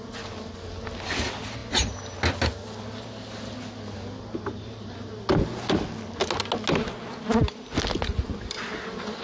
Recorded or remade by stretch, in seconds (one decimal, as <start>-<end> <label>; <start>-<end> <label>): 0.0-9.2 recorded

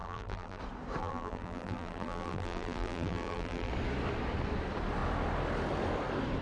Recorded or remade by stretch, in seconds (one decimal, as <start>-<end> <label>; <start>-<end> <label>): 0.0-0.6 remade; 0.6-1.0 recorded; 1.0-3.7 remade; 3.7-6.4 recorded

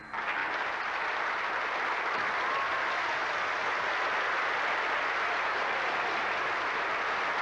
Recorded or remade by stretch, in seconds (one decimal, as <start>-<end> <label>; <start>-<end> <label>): 0.0-0.4 recorded; 0.4-2.9 remade; 2.9-7.4 recorded

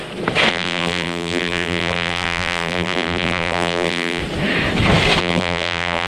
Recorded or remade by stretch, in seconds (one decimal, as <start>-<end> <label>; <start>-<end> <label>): 0.0-0.5 recorded; 0.5-4.2 remade; 4.2-5.2 recorded; 5.2-6.1 remade